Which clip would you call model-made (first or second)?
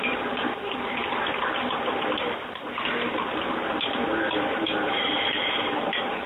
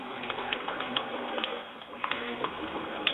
second